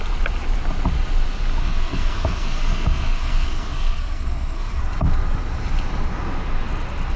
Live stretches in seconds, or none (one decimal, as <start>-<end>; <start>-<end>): 0.0-1.6; 4.8-7.2

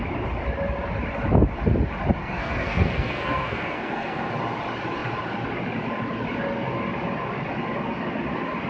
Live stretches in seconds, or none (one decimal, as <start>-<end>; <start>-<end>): 0.0-2.2; 4.3-8.7

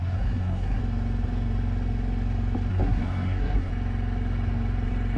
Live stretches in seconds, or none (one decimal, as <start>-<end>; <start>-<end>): 0.8-2.7; 3.7-5.2

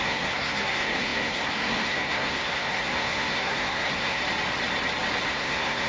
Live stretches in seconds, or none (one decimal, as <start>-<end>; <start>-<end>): 4.2-5.3

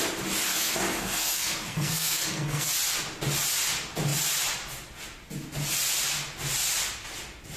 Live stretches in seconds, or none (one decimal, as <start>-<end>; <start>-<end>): 0.0-0.5; 2.7-7.6